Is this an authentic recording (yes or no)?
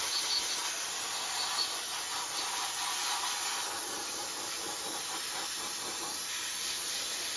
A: yes